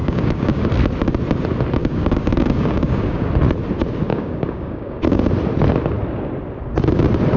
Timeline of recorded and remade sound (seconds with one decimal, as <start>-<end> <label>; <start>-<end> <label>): 0.0-0.6 remade; 0.6-1.8 recorded; 1.8-3.3 remade; 3.3-4.1 recorded; 4.1-5.2 remade; 5.2-7.4 recorded